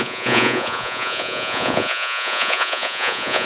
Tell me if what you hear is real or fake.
fake